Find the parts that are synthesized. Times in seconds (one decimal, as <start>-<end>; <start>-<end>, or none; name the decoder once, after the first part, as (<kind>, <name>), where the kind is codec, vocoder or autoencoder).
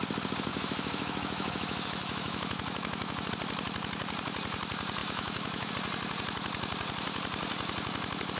0.5-3.3 (autoencoder, DAC-VAE); 5.0-5.7